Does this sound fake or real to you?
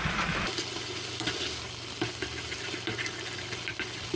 real